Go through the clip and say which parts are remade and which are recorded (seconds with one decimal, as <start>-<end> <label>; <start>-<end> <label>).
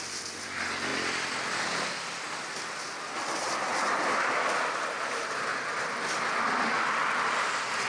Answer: 0.0-7.9 recorded